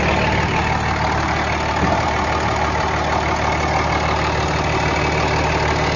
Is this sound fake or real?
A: real